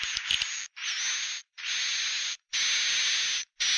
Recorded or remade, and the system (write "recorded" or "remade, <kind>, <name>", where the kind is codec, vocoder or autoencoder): recorded